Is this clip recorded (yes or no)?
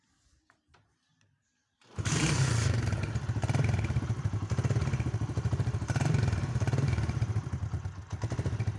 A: no